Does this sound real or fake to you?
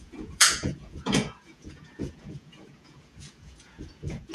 fake